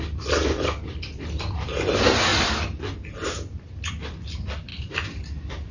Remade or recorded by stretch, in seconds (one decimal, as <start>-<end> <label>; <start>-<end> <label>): 0.0-5.7 recorded